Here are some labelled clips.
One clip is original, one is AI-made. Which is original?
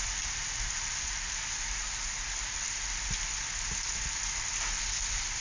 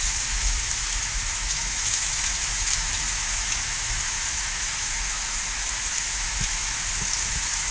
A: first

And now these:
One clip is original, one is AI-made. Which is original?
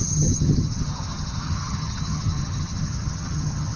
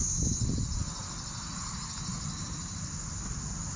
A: second